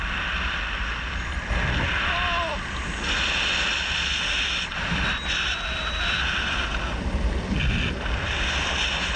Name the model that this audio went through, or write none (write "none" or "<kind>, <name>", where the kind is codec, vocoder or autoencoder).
none